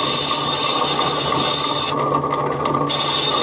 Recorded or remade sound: recorded